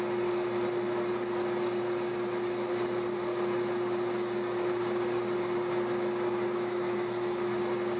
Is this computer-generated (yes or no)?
no